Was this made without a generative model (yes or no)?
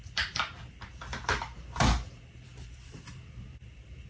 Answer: no